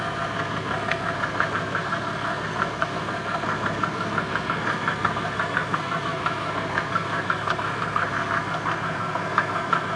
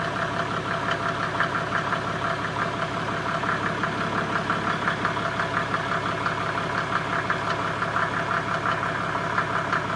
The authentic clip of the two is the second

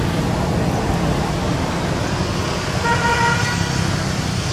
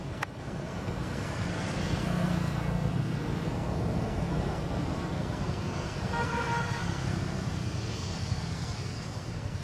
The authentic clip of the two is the first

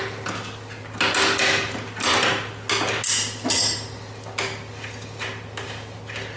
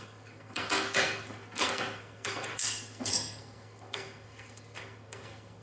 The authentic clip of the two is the first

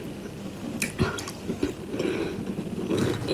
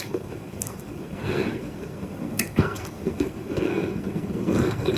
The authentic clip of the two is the first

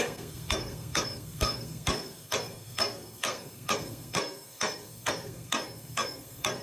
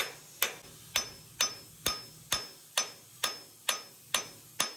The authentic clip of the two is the second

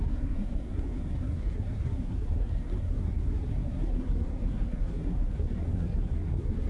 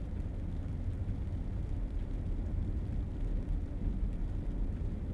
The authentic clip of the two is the second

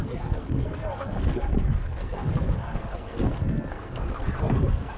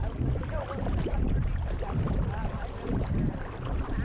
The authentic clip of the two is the second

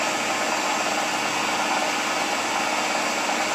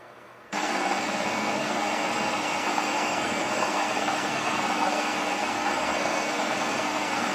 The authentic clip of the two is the first